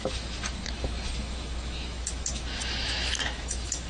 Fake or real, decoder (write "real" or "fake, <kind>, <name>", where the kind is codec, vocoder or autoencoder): fake, autoencoder, DAC-VAE